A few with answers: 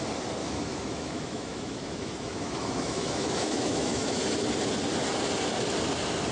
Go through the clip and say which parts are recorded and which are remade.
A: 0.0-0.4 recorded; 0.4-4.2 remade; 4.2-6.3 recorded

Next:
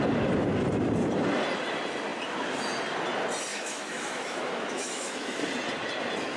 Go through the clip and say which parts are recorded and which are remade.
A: 0.0-3.5 recorded; 3.5-5.4 remade; 5.4-6.4 recorded

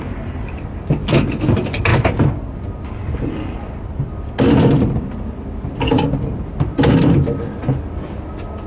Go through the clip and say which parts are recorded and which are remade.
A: 0.0-8.7 recorded